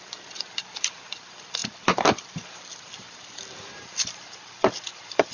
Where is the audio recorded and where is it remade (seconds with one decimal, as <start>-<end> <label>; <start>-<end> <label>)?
0.0-5.3 remade